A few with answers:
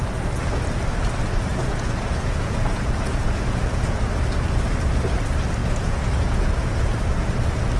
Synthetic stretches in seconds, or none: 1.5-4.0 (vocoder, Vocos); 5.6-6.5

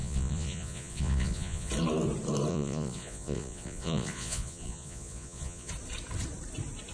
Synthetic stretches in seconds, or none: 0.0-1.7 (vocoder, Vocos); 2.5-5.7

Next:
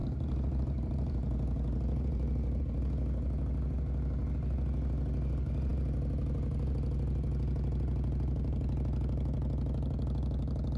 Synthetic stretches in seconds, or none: 0.0-2.6 (vocoder, BigVGAN v2)

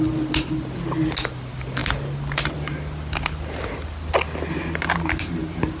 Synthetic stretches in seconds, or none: none